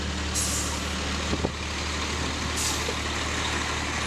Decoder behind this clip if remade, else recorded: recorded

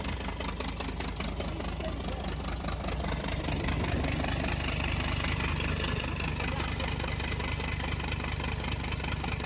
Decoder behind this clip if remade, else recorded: recorded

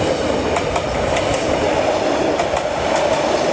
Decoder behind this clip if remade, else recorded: recorded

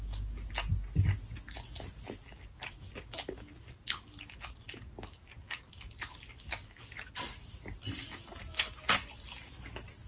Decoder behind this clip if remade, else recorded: recorded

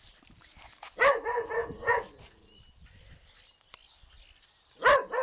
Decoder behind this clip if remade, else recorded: recorded